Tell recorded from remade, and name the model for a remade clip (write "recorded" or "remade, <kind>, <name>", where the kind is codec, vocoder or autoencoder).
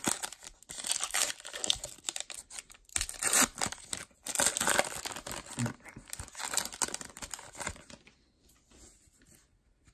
recorded